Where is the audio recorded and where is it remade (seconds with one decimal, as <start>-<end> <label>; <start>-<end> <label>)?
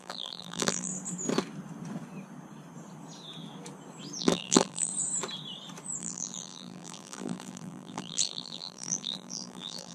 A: 0.0-0.9 remade; 0.9-4.2 recorded; 4.2-4.9 remade; 4.9-6.0 recorded; 6.0-9.9 remade